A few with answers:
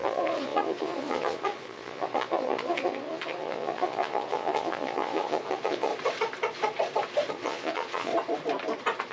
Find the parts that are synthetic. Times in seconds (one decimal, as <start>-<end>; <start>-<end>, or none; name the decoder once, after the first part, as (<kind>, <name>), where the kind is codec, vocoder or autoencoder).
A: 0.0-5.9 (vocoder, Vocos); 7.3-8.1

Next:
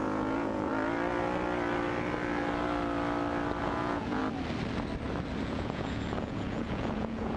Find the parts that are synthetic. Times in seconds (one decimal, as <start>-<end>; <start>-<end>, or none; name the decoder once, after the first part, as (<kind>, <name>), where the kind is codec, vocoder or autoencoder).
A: 0.0-0.7 (vocoder, Vocos); 3.6-4.2; 5.4-7.4

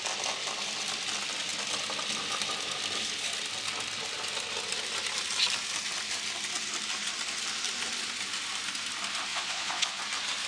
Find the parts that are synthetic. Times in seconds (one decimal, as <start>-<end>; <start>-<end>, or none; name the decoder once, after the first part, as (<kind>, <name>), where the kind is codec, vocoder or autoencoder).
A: 9.3-10.0 (vocoder, Vocos)

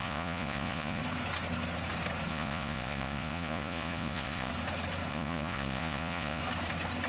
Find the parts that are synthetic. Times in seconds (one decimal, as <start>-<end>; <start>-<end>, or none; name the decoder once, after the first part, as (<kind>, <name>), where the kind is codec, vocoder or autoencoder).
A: 0.0-1.0 (vocoder, Vocos); 2.3-4.5; 5.1-6.4

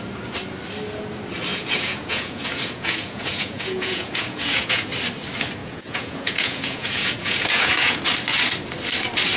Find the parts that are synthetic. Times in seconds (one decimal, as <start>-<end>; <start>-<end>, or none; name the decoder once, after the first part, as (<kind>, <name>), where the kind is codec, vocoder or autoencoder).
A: 1.5-4.9 (vocoder, Vocos); 5.6-8.0